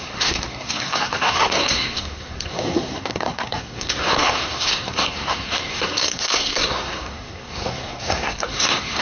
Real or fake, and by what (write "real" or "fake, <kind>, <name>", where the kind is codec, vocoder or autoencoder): fake, codec, SNAC